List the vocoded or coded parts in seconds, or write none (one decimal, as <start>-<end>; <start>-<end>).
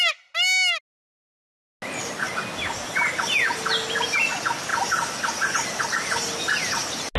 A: none